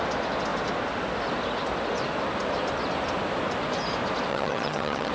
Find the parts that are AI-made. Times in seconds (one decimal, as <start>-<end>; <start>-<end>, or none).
4.3-5.1